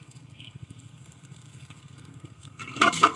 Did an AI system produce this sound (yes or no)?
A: yes